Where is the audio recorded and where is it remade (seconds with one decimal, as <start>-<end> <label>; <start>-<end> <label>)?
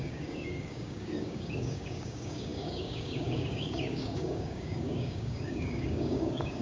0.0-6.6 remade